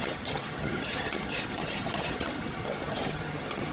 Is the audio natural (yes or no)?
no